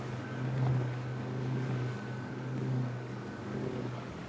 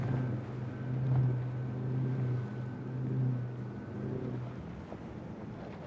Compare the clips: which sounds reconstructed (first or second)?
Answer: first